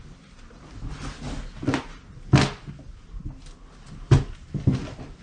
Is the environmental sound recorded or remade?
recorded